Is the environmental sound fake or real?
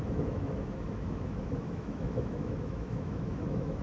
fake